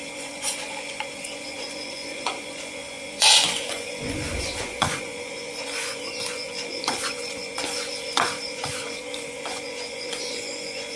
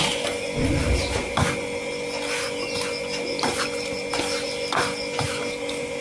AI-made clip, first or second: first